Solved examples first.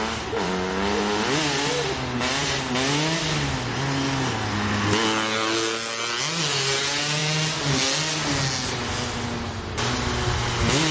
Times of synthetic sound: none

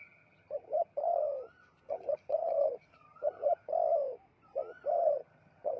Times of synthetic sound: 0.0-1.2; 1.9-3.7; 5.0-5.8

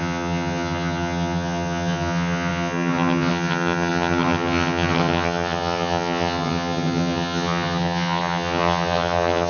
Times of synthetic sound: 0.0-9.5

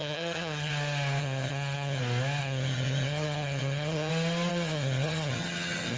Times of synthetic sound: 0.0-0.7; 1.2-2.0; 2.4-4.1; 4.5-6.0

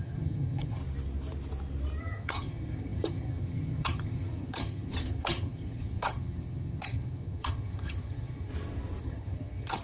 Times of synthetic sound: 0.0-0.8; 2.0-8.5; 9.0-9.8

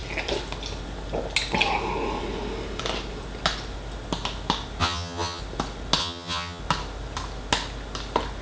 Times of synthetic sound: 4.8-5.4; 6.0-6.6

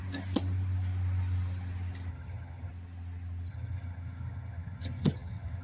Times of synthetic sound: 2.1-2.7; 3.5-5.6

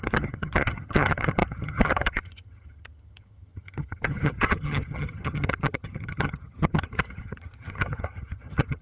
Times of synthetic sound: 0.0-8.8